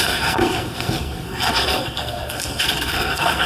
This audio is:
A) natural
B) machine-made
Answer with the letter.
B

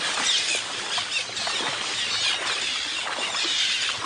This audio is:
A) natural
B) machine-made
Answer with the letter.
A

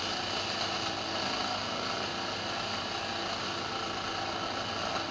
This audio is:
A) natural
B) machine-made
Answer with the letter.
A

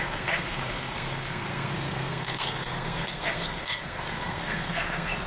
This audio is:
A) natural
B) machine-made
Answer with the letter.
B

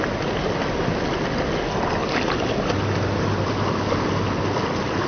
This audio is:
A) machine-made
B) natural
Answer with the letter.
B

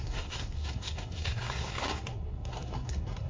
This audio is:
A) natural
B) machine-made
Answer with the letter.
B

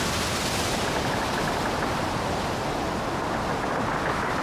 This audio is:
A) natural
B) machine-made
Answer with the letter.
A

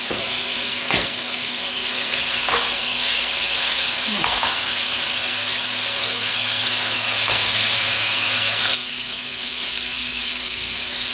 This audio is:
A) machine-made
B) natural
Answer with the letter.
A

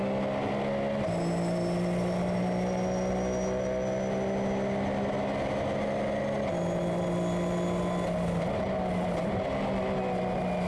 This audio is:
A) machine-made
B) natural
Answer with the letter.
B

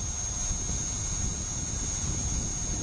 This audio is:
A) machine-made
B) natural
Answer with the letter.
B